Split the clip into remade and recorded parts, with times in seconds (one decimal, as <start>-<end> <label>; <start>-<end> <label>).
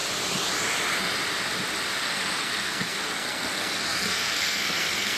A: 0.0-2.0 recorded; 2.0-5.2 remade